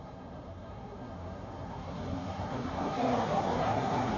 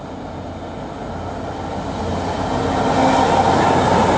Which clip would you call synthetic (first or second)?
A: first